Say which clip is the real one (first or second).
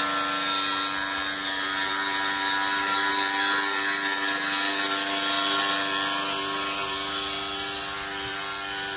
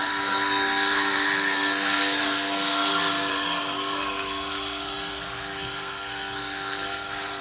first